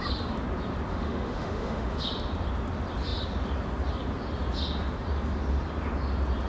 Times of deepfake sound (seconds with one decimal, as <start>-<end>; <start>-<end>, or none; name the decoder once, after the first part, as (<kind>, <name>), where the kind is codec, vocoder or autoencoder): 0.9-2.0 (autoencoder, DAC-VAE)